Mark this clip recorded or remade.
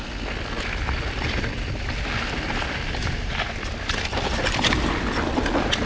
recorded